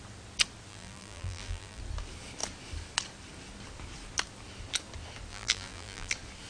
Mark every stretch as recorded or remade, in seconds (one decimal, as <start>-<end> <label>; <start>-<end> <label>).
0.0-0.7 recorded; 0.7-1.8 remade; 1.8-5.3 recorded; 5.3-6.1 remade; 6.1-6.5 recorded